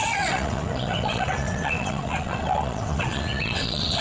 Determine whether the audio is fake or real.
fake